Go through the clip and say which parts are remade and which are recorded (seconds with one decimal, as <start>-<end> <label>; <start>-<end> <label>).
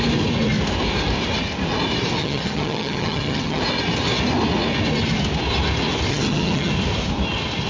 0.0-2.2 recorded; 2.2-3.6 remade; 3.6-6.1 recorded; 6.1-6.7 remade; 6.7-7.7 recorded